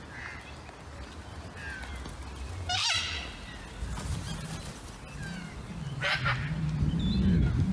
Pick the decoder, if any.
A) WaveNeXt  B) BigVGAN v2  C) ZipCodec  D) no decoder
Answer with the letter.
D